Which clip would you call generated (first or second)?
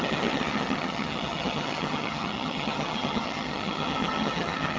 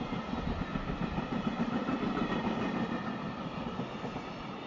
first